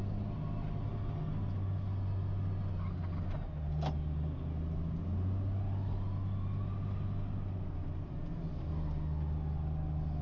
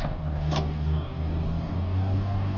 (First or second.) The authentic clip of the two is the first